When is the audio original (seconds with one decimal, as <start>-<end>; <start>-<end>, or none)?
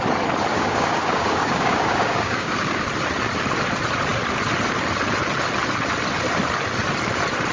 0.0-0.5; 2.8-7.5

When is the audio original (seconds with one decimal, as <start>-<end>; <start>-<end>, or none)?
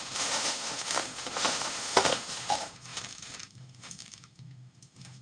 none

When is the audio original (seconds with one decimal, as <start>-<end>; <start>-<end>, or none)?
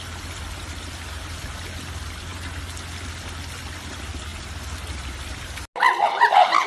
0.0-6.7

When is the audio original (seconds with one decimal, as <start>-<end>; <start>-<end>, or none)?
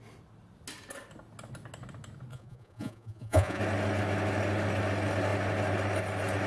0.0-2.3; 3.6-6.5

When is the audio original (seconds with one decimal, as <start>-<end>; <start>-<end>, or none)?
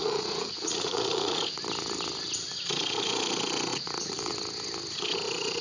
1.4-3.7; 4.3-5.6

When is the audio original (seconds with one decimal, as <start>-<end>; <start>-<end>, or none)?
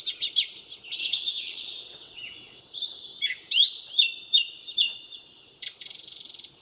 0.0-1.0; 2.6-6.6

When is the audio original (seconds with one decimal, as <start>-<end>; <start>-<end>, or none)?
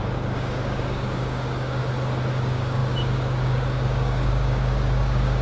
1.8-2.3